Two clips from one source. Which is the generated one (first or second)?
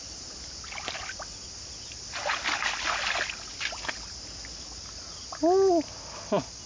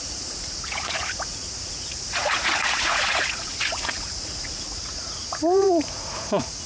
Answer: second